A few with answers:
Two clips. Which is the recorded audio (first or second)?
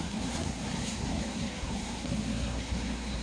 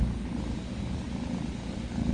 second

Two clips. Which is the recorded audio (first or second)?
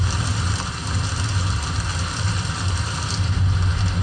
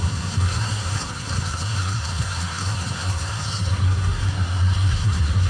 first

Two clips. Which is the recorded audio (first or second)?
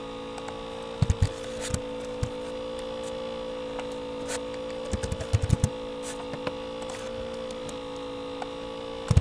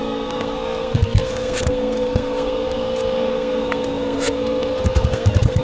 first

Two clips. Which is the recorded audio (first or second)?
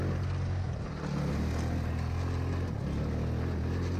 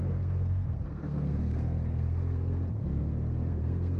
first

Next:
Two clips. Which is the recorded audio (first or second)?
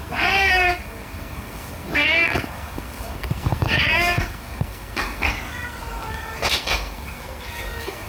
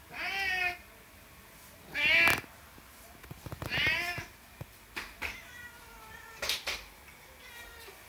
second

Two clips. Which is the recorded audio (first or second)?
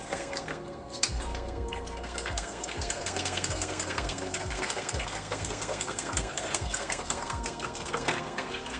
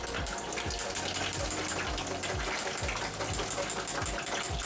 second